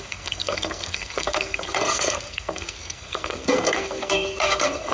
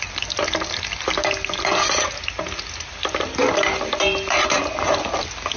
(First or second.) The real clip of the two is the second